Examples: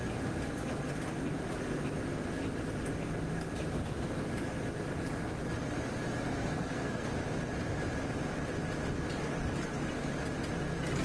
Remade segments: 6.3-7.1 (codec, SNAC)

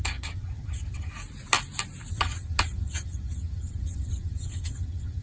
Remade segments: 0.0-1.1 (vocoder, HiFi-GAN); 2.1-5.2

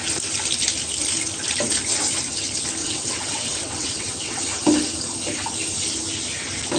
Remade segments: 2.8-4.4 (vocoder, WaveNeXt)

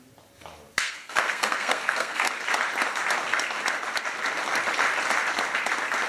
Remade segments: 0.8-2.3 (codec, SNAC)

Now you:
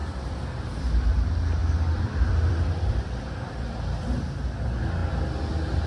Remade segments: 0.0-0.6 (vocoder, BigVGAN v2); 1.6-4.2

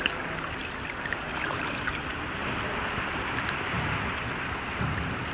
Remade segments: none